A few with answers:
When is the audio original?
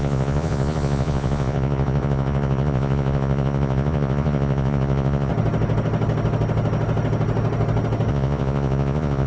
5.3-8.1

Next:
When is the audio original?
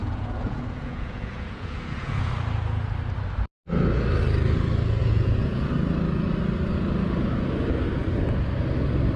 2.3-5.0; 5.7-9.2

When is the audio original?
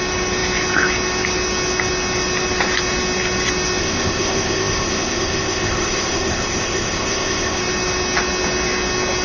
0.0-3.8; 7.6-9.2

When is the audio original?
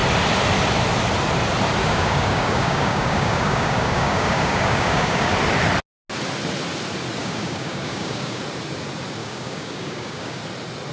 0.0-1.8; 5.3-7.2; 8.4-9.2; 10.4-10.9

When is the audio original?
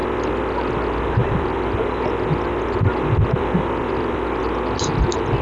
0.0-5.4